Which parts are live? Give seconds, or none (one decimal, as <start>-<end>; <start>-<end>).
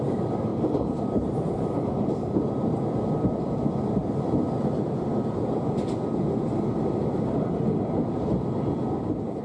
0.0-0.5; 2.5-9.4